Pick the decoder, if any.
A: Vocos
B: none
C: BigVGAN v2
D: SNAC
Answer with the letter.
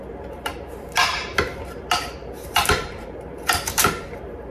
C